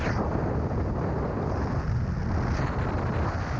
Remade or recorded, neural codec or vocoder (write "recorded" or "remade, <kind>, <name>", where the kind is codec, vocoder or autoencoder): recorded